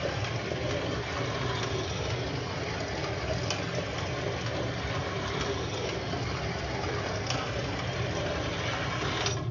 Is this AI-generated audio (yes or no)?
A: no